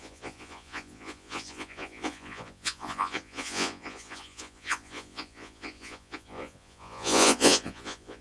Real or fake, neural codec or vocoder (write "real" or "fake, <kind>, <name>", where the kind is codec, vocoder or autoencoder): fake, vocoder, Vocos